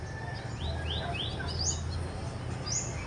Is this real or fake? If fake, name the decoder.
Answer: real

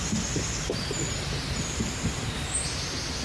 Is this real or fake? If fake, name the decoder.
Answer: real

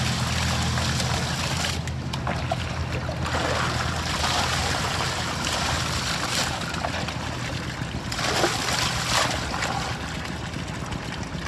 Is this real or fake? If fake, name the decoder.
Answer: real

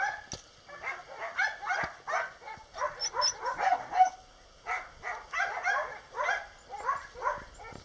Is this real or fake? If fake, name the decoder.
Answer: real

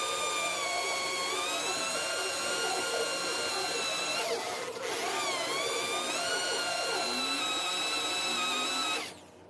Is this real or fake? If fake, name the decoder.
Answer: real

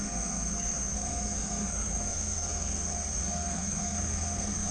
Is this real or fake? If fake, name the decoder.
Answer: fake, codec, SNAC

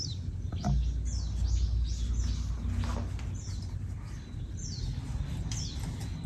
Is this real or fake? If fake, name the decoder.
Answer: real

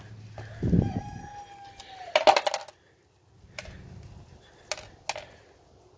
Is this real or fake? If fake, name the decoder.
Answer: real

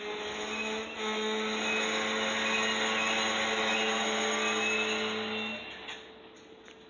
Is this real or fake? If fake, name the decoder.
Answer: real